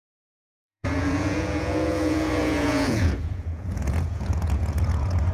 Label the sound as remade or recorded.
remade